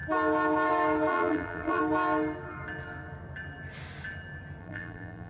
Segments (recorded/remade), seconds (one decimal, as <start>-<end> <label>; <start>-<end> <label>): 0.0-1.1 recorded; 1.1-1.8 remade; 1.8-4.6 recorded; 4.6-5.3 remade